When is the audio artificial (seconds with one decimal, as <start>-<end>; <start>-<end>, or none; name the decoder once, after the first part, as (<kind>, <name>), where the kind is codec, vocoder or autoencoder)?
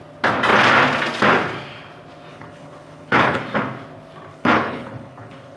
2.3-3.4 (codec, HILCodec); 4.3-5.6